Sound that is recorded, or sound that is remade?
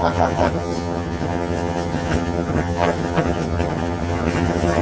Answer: remade